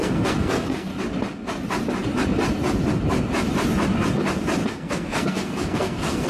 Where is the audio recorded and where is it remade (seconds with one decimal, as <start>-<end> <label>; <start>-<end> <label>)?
0.0-0.9 remade; 0.9-4.7 recorded; 4.7-6.3 remade